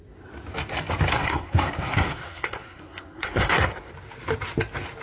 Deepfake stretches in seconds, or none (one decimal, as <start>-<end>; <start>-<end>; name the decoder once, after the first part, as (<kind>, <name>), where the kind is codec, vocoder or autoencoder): 1.1-3.9 (codec, SNAC)